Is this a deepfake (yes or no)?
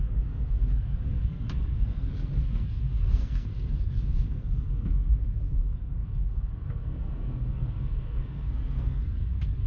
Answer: yes